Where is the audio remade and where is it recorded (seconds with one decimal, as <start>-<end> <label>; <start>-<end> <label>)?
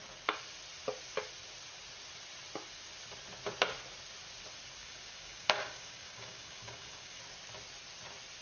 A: 0.0-4.8 recorded; 4.8-7.2 remade; 7.2-8.4 recorded